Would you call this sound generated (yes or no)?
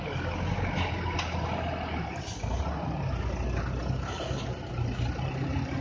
no